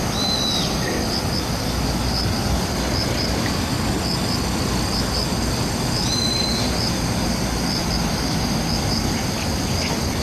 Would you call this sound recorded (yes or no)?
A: yes